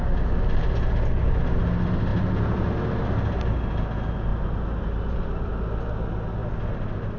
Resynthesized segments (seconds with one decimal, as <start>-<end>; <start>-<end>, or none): 4.3-5.5